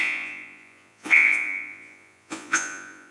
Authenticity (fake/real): fake